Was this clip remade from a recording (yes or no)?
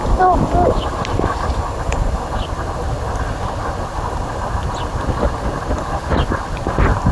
no